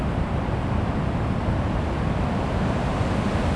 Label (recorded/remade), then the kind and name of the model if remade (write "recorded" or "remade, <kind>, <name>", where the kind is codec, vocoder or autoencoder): recorded